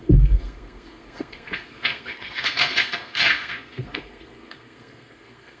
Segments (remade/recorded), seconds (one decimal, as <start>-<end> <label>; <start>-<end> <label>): 0.0-5.6 remade